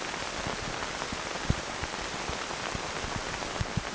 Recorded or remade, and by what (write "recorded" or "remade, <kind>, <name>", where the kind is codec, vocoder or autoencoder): recorded